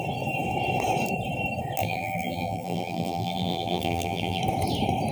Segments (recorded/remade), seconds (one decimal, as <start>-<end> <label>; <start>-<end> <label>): 0.0-1.8 recorded; 1.8-4.4 remade; 4.4-5.1 recorded